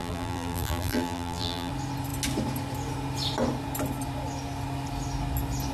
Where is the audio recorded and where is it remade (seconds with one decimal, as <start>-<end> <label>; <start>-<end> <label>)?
0.0-1.7 remade; 1.7-5.7 recorded